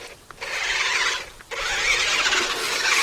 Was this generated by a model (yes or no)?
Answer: no